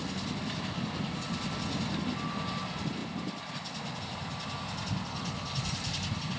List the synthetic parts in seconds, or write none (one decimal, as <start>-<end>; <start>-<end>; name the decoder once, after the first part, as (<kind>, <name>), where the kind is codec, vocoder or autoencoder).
3.0-4.0 (vocoder, BigVGAN v2)